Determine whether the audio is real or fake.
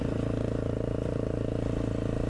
real